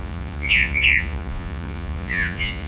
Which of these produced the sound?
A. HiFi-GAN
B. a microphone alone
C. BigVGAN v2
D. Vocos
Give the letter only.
D